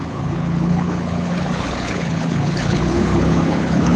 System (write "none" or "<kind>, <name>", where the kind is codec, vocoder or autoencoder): codec, HILCodec